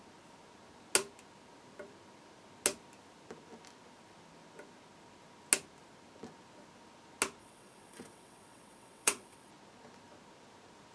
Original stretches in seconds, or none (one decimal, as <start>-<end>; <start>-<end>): 0.0-7.4; 9.5-10.9

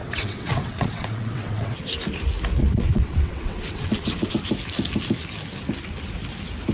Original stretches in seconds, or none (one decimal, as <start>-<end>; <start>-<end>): 1.7-2.6; 4.3-6.7

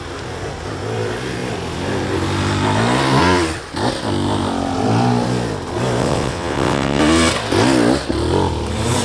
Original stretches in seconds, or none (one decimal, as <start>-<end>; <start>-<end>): 0.0-6.0; 7.0-9.0

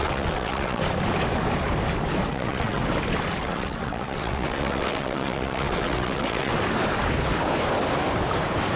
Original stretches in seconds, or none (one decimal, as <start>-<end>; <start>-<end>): 0.8-2.3; 2.8-3.4; 6.5-8.8